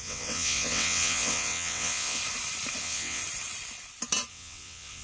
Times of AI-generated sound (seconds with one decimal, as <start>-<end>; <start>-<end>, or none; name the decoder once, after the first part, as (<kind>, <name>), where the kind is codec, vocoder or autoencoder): 0.0-2.2 (vocoder, WaveNeXt); 2.8-3.2; 4.3-5.0